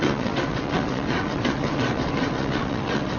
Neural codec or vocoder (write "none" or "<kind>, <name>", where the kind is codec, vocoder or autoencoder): vocoder, WaveNeXt